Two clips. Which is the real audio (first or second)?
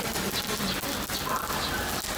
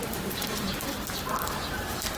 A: first